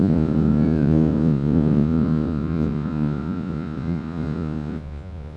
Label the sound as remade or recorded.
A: remade